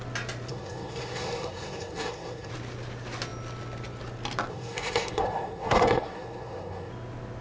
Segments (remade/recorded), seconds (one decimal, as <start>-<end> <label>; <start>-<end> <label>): 0.0-0.5 recorded; 0.5-2.5 remade; 2.5-4.5 recorded; 4.5-6.9 remade; 6.9-7.4 recorded